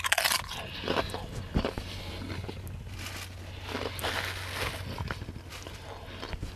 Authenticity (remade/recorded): recorded